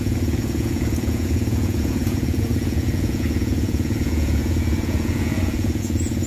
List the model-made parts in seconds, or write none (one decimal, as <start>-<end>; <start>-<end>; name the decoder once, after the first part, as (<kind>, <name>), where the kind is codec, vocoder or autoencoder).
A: 0.0-6.3 (vocoder, Vocos)